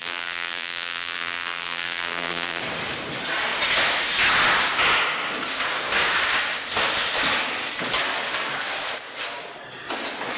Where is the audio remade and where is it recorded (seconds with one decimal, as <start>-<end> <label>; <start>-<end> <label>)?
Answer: 0.0-2.6 remade; 2.6-10.4 recorded